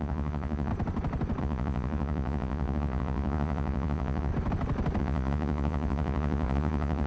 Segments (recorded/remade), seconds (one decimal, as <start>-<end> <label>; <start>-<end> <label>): 0.0-0.7 remade; 0.7-1.4 recorded; 1.4-4.3 remade; 4.3-5.0 recorded; 5.0-7.1 remade